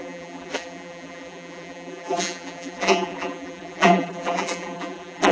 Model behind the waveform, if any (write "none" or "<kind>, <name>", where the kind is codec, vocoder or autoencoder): vocoder, BigVGAN v2